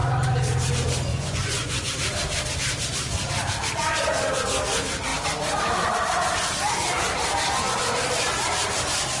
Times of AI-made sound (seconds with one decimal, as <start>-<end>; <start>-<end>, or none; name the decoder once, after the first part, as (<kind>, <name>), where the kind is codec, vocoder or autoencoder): 1.1-1.9 (vocoder, Vocos)